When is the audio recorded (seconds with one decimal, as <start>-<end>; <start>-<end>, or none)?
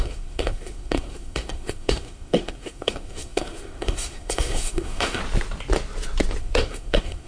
5.2-6.4